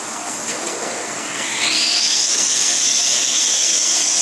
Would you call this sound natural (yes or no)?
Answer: no